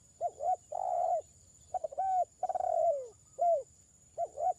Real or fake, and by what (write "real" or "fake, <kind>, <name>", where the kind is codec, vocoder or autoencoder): fake, vocoder, BigVGAN v2